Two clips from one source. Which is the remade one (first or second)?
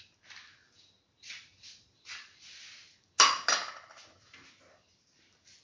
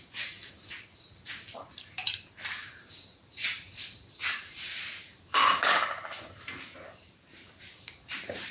second